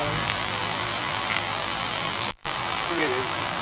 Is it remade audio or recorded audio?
remade